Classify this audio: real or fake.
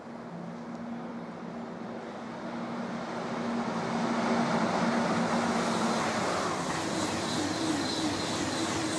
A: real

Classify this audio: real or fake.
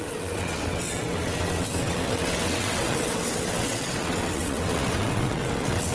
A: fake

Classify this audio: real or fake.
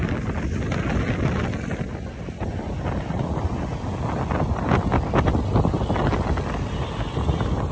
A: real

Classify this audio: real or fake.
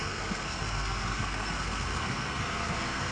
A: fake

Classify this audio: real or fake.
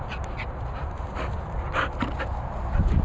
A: real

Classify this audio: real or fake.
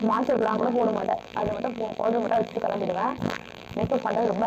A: fake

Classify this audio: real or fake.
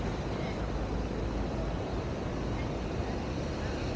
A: real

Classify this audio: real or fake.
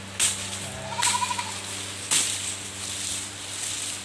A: real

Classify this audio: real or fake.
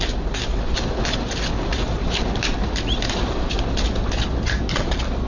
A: real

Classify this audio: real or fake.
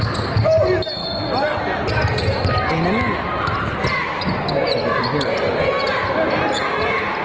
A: real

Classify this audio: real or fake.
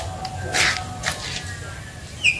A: real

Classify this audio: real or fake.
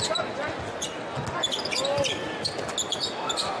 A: real